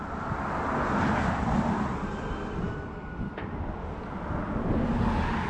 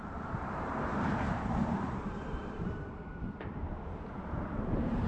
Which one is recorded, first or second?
first